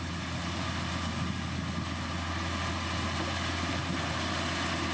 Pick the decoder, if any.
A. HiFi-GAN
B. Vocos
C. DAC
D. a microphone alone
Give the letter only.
D